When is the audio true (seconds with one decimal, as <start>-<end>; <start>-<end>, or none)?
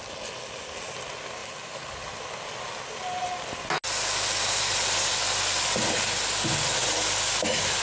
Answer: 0.0-1.4; 2.2-7.8